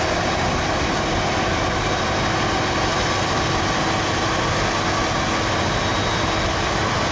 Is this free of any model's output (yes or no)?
yes